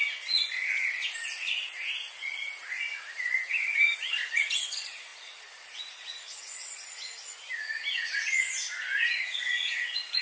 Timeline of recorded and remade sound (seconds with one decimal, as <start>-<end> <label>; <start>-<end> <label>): 0.0-10.2 remade